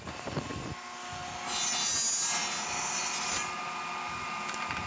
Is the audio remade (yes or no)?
no